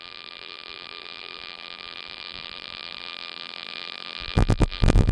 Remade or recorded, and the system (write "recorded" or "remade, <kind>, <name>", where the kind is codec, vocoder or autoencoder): remade, vocoder, BigVGAN v2